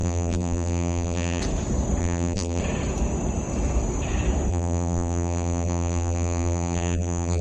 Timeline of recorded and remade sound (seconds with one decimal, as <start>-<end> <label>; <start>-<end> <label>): 0.0-1.4 remade; 1.4-2.0 recorded; 2.0-2.6 remade; 2.6-4.5 recorded; 4.5-7.4 remade